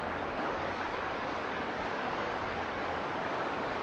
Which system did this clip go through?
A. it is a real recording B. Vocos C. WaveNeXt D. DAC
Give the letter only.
D